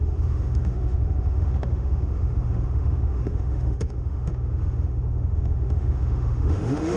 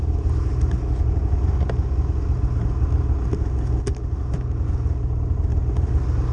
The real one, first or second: second